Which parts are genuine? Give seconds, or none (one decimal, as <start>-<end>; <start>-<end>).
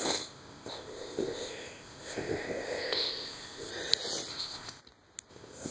3.7-4.3; 4.8-5.3